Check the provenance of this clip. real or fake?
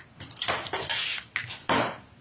real